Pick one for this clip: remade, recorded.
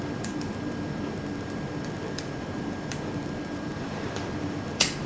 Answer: remade